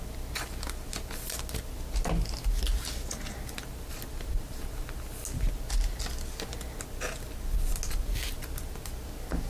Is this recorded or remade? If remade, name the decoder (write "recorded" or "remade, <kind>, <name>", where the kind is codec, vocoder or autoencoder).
recorded